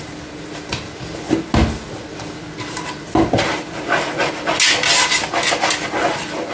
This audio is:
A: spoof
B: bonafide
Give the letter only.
B